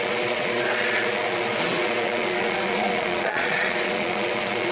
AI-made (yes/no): yes